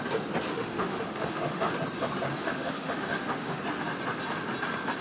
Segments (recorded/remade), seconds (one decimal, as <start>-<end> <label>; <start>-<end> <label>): 0.0-0.5 recorded; 0.5-1.7 remade; 1.7-2.3 recorded; 2.3-3.6 remade; 3.6-5.0 recorded